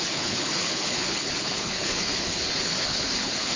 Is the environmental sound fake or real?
fake